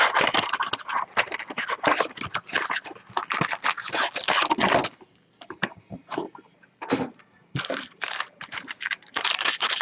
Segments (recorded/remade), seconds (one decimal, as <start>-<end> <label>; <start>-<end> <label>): 0.0-5.6 recorded; 5.6-9.8 remade